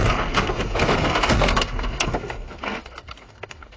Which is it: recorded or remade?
remade